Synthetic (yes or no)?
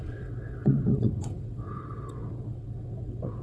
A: yes